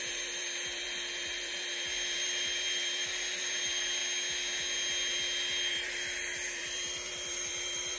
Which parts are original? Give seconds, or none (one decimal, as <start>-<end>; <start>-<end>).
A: 4.0-5.7